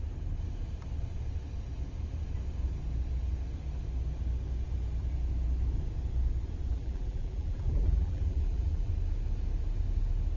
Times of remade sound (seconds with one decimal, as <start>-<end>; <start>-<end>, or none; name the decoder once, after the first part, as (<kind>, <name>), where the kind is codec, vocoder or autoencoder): 6.7-8.9 (vocoder, BigVGAN v2)

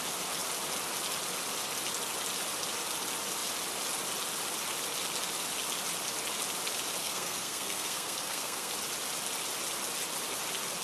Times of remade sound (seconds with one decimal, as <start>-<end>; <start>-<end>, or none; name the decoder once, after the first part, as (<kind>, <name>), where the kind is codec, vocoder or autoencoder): 7.0-8.7 (codec, SNAC)

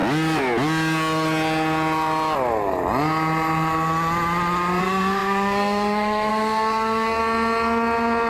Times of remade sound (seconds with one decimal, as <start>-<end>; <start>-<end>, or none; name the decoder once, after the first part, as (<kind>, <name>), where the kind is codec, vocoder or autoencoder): 4.8-7.2 (codec, SNAC)

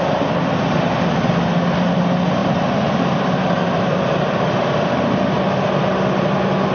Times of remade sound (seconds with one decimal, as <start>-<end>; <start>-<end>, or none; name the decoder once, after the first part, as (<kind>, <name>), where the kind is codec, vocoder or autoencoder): 2.4-4.8 (vocoder, BigVGAN v2)